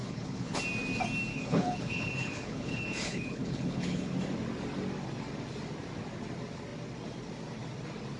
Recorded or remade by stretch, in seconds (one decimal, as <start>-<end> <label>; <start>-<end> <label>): 0.0-0.6 remade; 0.6-1.3 recorded; 1.3-4.1 remade; 4.1-8.2 recorded